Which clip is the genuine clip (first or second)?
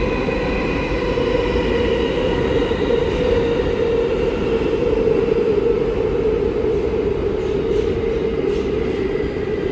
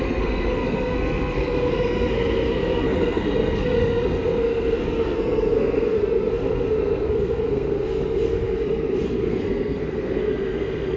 first